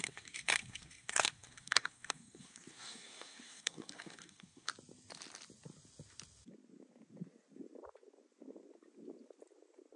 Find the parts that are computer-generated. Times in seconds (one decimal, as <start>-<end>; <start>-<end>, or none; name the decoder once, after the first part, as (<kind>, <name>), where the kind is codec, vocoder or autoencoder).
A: 0.0-4.7 (codec, SNAC)